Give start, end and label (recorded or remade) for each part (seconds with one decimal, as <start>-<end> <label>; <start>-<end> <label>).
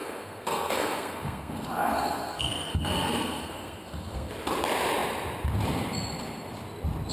0.0-4.3 remade; 4.3-7.1 recorded